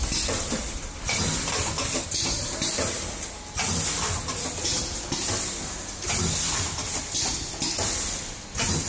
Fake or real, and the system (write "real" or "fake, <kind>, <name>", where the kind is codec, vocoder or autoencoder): real